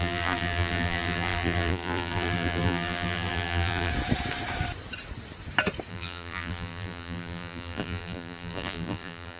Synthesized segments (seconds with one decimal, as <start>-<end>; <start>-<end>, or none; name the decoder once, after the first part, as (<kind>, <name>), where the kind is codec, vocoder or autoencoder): 0.0-3.9 (vocoder, BigVGAN v2); 5.9-9.4